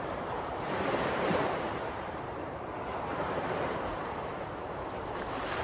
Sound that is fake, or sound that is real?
fake